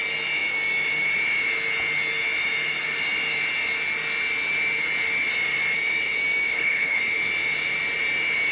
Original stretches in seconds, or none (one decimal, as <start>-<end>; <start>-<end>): 0.0-6.5; 7.0-8.5